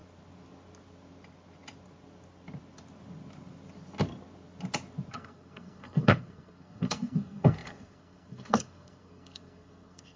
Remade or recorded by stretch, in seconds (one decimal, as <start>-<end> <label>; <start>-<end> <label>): 0.0-5.1 recorded; 5.1-10.2 remade